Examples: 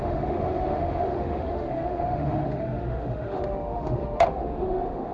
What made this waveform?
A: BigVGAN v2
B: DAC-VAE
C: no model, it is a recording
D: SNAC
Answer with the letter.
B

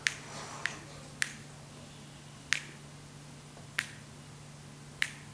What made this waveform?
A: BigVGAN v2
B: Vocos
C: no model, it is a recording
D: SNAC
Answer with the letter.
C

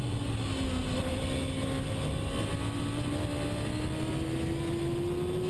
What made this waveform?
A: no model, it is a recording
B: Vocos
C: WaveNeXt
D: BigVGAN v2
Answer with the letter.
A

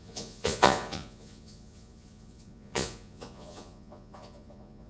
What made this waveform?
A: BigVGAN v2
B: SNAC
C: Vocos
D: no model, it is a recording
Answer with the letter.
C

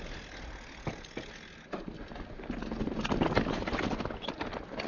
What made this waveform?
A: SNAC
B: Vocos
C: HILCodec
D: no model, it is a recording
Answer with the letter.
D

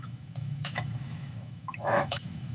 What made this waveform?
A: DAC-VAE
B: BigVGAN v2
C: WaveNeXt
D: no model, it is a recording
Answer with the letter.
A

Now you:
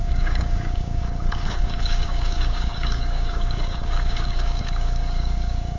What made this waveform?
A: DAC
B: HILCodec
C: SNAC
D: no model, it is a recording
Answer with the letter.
A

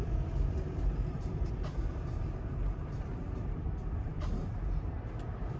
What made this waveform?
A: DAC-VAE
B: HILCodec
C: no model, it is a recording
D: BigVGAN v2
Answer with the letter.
D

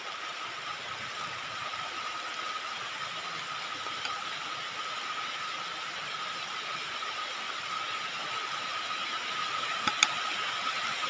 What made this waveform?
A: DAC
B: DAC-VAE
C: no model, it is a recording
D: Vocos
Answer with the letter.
C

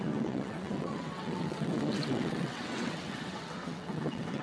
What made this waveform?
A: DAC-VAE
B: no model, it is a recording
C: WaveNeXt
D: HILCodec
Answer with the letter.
C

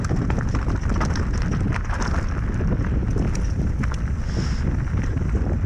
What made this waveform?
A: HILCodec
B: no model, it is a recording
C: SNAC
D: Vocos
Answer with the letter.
B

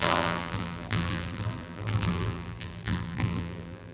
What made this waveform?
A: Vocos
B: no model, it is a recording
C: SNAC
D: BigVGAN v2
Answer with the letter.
D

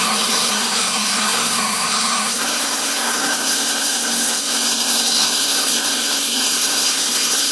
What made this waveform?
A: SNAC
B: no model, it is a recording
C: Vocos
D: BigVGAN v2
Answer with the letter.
A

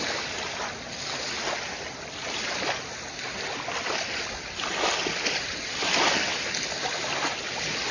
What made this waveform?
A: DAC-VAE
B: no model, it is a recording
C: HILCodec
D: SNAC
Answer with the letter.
B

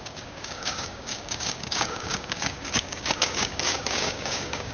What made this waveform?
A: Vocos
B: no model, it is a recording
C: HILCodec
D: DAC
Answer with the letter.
D